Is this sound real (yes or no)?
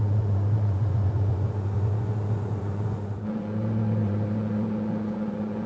no